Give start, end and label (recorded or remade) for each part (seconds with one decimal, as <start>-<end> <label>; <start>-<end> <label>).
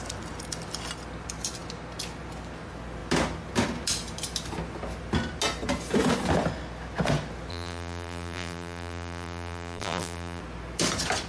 0.0-7.5 recorded; 7.5-10.4 remade; 10.4-11.3 recorded